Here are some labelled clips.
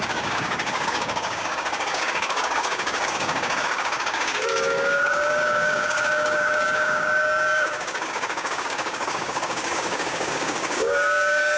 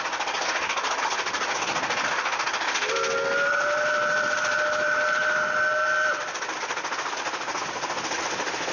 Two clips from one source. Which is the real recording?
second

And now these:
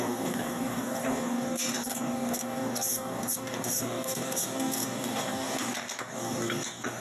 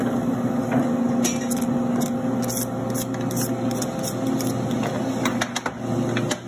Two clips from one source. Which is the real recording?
second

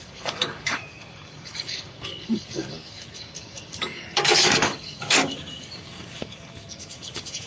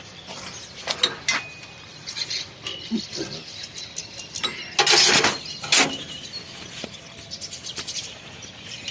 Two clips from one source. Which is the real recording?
second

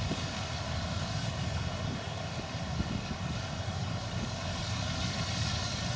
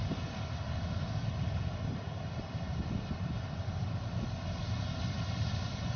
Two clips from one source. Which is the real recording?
second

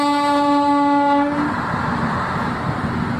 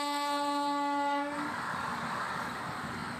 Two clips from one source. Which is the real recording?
first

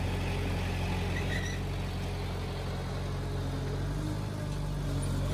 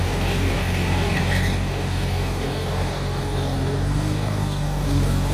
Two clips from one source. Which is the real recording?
first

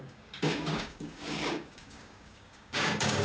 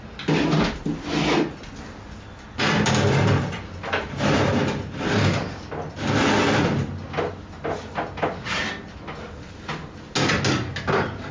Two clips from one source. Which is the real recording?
second